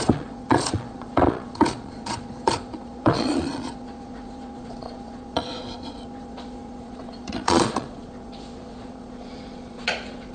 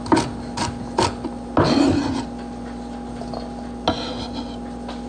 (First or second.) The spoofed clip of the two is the first